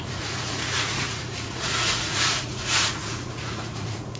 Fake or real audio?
fake